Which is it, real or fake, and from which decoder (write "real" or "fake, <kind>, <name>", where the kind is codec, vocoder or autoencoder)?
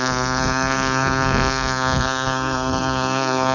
fake, codec, SNAC